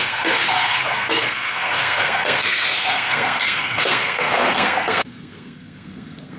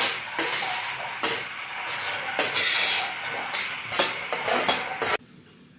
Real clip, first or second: second